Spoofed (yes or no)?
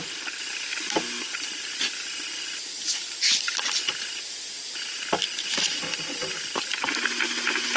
no